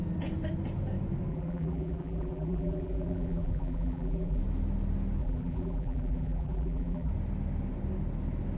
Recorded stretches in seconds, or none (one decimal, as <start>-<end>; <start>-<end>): 0.0-1.3; 4.4-5.2; 7.1-8.6